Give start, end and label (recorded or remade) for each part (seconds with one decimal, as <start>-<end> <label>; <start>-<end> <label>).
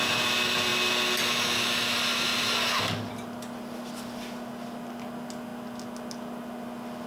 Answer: 0.0-7.1 recorded